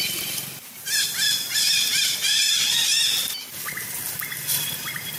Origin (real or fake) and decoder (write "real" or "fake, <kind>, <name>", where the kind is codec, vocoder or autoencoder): real